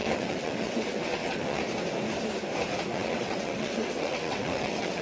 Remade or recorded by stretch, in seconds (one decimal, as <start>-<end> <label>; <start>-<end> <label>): 0.0-1.6 remade; 1.6-2.9 recorded; 2.9-5.0 remade